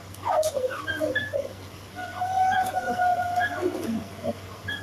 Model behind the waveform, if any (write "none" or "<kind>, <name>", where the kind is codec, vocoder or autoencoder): codec, SNAC